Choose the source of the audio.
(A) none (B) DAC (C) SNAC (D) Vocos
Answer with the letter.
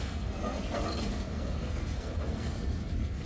C